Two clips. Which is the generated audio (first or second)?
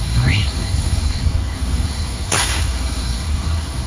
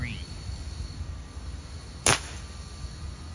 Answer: first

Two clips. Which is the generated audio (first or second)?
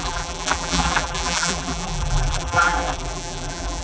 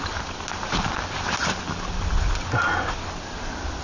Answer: first